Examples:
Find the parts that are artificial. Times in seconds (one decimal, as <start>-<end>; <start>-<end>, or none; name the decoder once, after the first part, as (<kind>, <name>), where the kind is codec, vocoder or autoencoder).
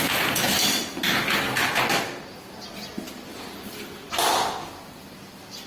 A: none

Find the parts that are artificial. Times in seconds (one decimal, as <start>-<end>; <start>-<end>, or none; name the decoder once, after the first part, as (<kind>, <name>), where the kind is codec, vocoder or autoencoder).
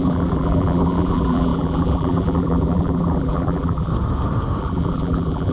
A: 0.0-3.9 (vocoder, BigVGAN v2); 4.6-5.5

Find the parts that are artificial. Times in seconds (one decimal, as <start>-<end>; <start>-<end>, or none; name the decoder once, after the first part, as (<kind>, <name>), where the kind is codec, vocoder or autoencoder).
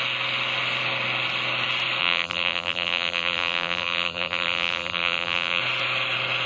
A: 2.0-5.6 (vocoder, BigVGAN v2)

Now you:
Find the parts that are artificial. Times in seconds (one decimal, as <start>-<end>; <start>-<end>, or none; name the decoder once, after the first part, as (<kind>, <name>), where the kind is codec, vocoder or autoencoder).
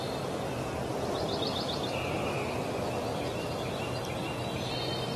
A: 0.9-4.0 (vocoder, BigVGAN v2)